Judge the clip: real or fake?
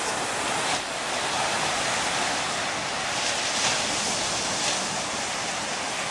real